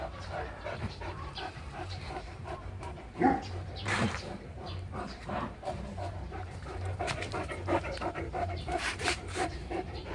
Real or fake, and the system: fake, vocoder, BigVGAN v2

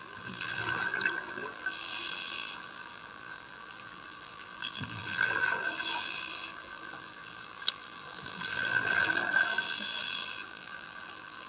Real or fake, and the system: fake, vocoder, BigVGAN v2